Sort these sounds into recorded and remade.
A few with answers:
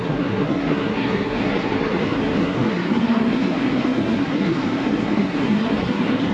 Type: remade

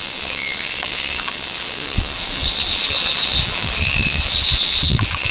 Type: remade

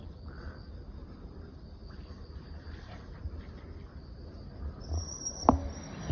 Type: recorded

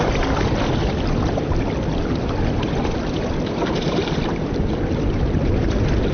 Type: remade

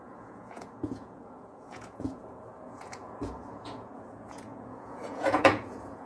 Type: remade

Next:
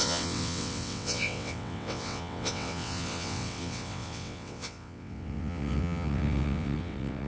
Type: remade